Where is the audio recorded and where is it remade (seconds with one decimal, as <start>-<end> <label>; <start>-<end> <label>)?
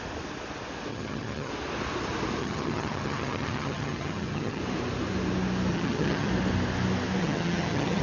0.0-0.9 recorded; 0.9-1.5 remade; 1.5-2.4 recorded; 2.4-4.6 remade; 4.6-5.7 recorded; 5.7-6.3 remade; 6.3-7.2 recorded; 7.2-8.0 remade